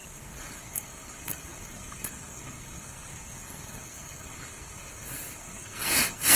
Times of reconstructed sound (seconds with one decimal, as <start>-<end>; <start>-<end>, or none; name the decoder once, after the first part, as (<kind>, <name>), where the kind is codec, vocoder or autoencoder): 0.0-6.4 (codec, SNAC)